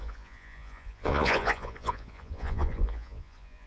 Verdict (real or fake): fake